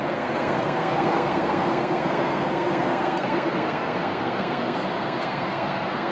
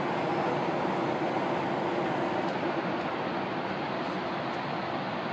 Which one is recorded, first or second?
second